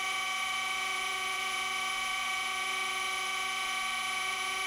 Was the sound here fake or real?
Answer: fake